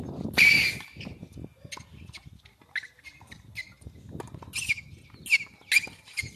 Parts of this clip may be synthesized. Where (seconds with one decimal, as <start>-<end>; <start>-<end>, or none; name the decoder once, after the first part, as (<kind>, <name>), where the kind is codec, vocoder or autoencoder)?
none